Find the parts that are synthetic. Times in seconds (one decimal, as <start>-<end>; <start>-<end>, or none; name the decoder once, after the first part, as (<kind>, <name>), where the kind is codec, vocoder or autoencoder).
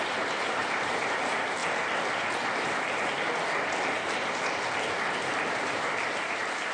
0.0-1.6 (vocoder, BigVGAN v2); 5.5-6.7